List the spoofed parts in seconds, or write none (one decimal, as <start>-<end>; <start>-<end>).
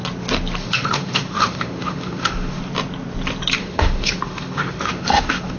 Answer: 0.6-2.6; 3.6-5.6